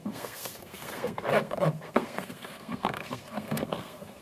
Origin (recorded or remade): remade